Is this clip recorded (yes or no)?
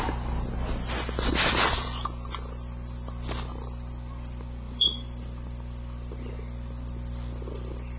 no